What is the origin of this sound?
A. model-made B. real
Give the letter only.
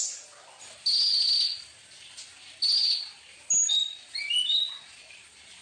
B